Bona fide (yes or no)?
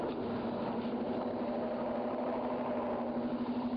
yes